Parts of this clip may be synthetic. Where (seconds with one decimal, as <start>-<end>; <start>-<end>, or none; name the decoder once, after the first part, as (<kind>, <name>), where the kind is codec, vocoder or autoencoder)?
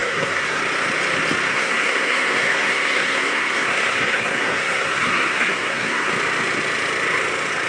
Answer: 0.0-0.6 (codec, SNAC); 1.5-6.1